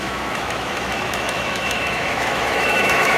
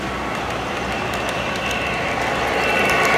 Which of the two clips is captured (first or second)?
second